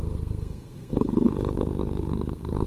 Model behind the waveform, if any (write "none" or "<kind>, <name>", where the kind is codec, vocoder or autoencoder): codec, SNAC